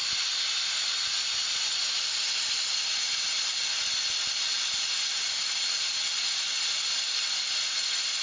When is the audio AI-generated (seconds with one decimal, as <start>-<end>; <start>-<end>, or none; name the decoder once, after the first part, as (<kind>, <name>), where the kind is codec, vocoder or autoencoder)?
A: none